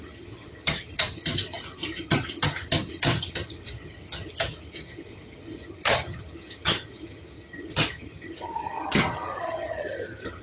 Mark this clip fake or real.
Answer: fake